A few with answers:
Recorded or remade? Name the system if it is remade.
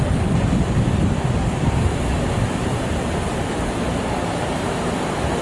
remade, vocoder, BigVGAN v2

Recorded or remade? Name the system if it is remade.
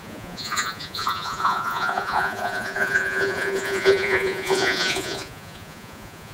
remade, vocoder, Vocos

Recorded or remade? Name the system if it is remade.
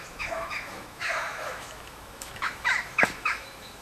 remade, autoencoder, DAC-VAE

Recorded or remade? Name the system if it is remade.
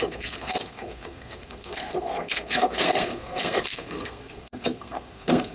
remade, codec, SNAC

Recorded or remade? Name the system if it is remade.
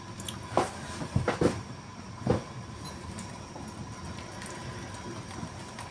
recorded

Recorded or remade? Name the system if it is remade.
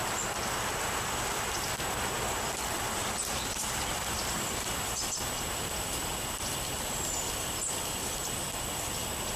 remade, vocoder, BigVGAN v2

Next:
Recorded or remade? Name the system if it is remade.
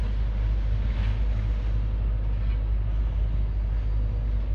recorded